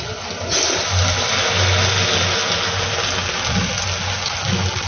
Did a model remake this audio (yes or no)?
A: no